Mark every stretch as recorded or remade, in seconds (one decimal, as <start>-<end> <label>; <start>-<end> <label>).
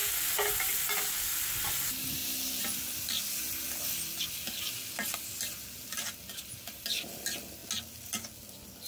0.0-8.9 recorded